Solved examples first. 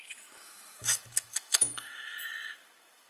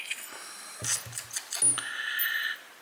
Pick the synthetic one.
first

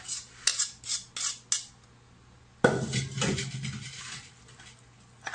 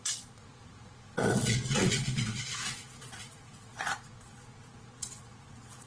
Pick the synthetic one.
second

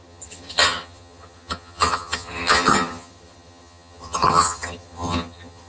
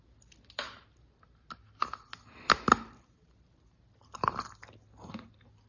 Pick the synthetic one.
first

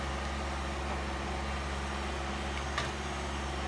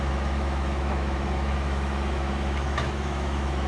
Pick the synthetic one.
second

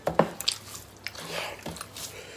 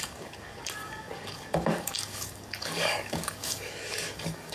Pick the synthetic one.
second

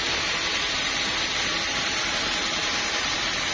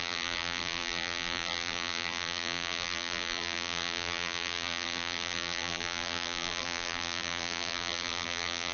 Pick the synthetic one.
second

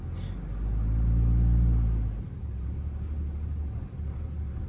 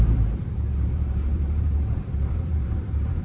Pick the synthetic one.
second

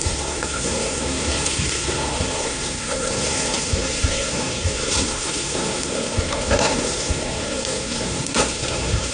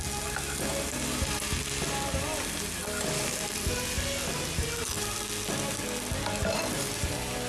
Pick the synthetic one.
first